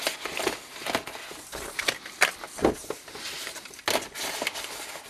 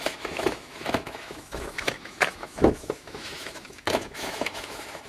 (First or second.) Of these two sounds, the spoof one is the second